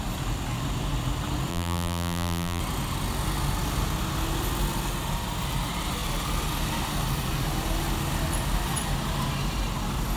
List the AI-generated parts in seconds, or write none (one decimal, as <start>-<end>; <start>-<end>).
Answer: 1.5-2.6

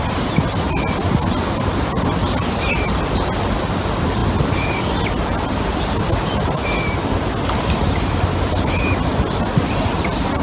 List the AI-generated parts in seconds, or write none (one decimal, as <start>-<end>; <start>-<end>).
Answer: none

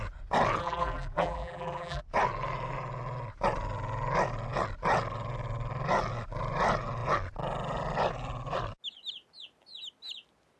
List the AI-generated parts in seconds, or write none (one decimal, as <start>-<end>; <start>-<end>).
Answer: 0.6-2.0

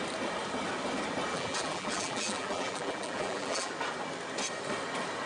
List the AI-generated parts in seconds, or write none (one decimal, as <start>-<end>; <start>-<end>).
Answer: 1.3-3.7

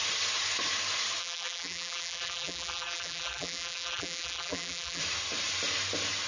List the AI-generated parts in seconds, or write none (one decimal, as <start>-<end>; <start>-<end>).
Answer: 1.2-5.0

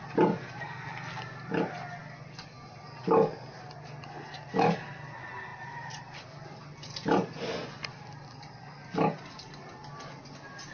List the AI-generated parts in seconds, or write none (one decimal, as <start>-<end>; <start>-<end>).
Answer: none

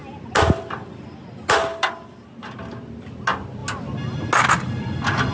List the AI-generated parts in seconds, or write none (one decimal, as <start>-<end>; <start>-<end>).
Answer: none

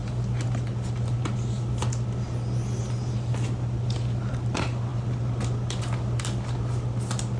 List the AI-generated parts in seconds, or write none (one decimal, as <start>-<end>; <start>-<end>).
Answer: none